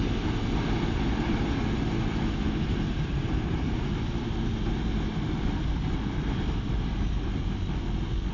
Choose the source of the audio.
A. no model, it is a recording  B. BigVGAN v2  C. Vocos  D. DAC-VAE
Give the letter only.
A